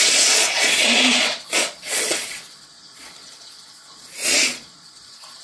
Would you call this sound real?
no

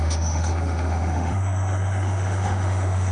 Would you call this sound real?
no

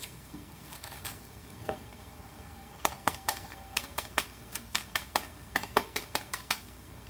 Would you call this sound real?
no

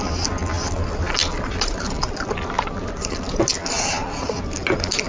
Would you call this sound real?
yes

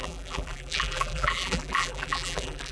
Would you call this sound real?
no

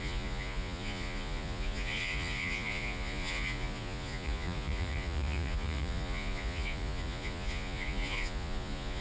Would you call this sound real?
no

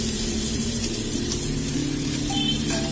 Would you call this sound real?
no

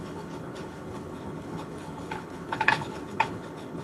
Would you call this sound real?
no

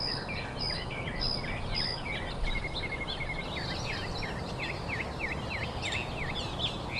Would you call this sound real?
yes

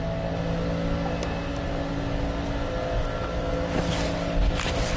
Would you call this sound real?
yes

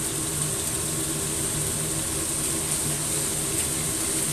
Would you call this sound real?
yes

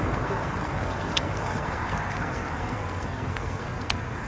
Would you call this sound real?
no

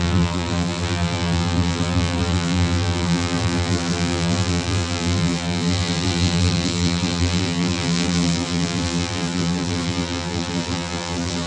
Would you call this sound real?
no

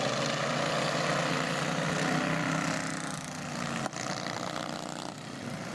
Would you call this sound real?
yes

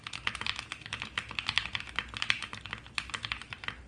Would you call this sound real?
yes